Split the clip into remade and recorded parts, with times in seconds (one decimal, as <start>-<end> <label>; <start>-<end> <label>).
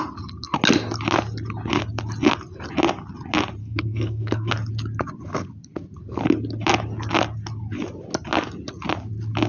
0.0-3.6 recorded; 3.6-4.5 remade; 4.5-9.5 recorded